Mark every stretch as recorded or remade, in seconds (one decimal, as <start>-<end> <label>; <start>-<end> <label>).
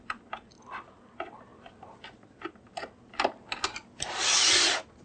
0.0-5.0 recorded